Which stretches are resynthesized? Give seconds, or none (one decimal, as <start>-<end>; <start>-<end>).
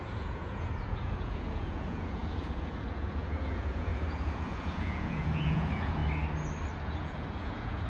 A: 0.0-6.0; 6.8-7.9